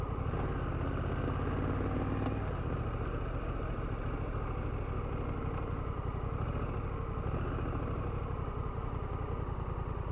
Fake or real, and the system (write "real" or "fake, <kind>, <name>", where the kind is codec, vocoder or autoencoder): real